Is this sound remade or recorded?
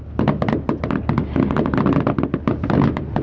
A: recorded